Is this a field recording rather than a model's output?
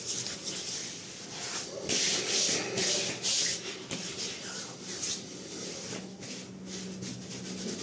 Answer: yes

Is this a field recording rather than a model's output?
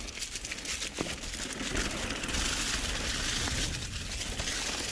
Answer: yes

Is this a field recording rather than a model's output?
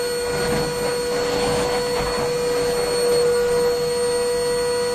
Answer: yes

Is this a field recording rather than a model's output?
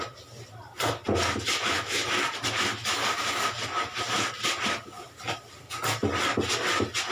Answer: yes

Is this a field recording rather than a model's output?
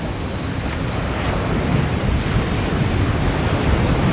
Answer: yes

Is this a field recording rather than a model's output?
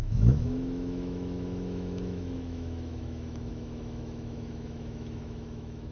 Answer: no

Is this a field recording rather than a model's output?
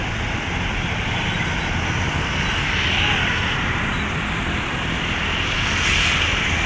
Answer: yes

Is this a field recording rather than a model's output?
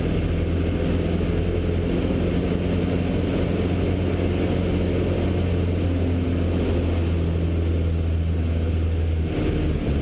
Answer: yes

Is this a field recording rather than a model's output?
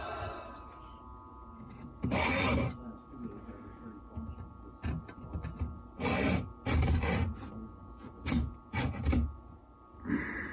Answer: yes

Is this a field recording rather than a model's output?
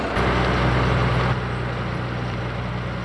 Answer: yes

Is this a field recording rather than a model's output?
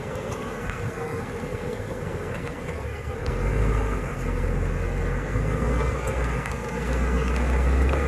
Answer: no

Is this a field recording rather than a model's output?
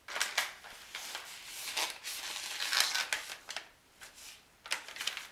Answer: yes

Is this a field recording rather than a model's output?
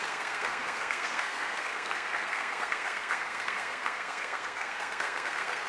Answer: no